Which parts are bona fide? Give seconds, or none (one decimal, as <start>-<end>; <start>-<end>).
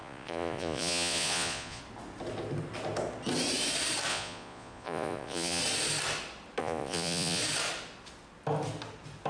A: 1.8-4.1; 5.6-6.6; 7.4-9.3